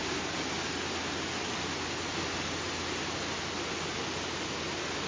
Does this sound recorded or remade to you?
recorded